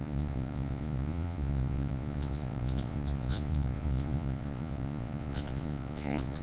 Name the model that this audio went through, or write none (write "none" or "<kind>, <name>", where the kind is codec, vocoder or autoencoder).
vocoder, Vocos